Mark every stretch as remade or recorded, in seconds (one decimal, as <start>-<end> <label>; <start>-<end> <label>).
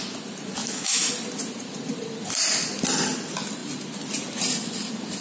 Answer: 0.0-0.6 recorded; 0.6-1.1 remade; 1.1-5.2 recorded